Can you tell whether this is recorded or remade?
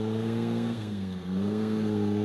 remade